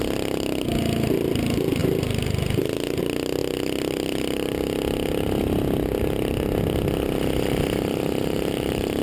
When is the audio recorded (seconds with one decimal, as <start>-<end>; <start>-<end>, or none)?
0.0-9.0